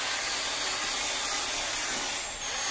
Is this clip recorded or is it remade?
recorded